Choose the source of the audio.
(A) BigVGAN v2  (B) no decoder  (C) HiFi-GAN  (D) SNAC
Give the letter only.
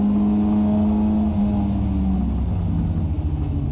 B